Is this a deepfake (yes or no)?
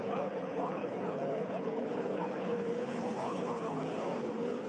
yes